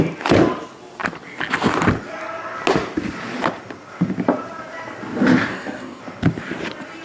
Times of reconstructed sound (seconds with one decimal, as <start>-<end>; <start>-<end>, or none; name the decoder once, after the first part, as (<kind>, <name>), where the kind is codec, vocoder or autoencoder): 5.5-6.0 (codec, DAC)